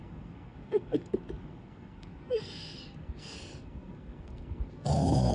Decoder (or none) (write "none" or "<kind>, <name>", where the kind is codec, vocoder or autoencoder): codec, SNAC